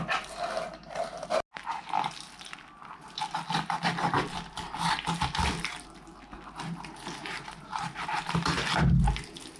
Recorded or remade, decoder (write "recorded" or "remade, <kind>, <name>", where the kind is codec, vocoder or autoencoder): recorded